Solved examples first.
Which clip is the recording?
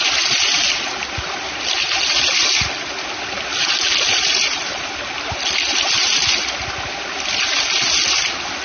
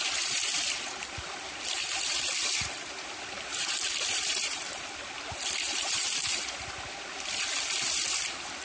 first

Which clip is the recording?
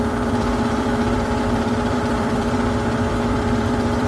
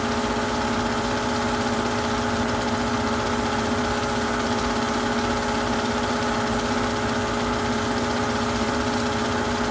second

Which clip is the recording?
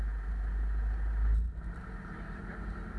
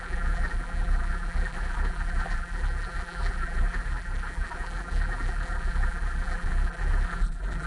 first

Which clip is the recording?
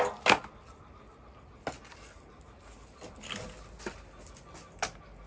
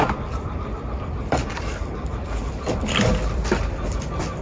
first